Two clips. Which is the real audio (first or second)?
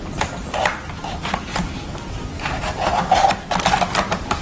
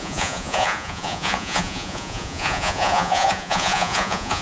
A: first